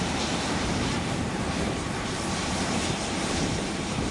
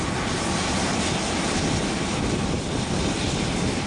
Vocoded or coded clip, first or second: first